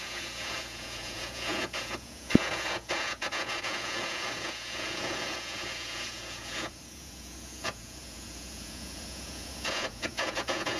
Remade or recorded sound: remade